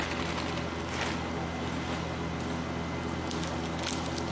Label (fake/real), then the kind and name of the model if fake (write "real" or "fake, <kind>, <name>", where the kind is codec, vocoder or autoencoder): real